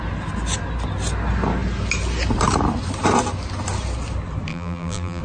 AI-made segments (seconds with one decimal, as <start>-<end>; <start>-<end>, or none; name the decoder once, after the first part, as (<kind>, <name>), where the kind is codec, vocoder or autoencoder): 4.5-5.2 (vocoder, BigVGAN v2)